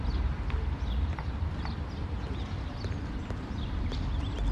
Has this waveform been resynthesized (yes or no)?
no